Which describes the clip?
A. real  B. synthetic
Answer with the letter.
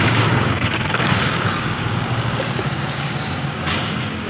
B